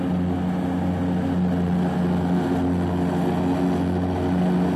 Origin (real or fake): real